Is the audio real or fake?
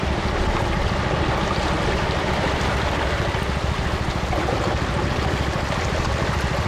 real